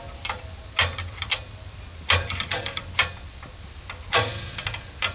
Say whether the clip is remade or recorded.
recorded